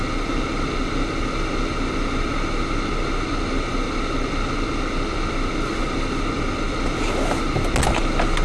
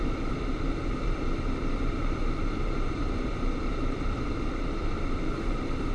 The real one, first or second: first